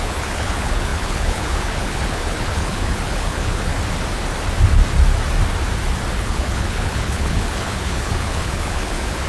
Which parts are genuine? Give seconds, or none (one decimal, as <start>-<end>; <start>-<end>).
3.7-6.1